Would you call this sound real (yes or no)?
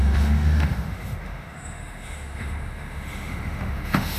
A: no